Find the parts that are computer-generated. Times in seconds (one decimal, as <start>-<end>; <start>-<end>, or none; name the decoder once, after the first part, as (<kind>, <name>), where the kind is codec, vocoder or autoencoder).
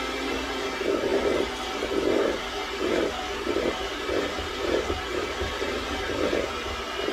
none